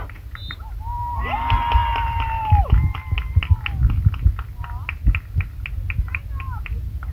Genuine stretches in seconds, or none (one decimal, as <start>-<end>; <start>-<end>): 0.0-7.1